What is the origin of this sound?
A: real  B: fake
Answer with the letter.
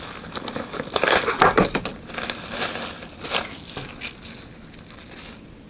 A